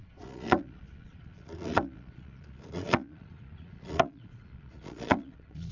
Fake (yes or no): yes